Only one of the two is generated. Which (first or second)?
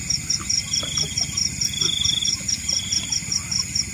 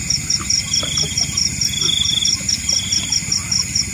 first